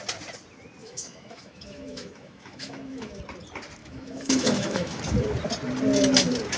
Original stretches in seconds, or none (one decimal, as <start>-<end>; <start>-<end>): 0.0-0.8; 3.2-3.8; 5.0-6.6